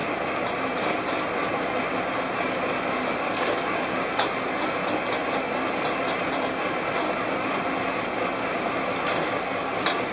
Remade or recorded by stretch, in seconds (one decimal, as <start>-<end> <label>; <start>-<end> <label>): 0.0-10.1 recorded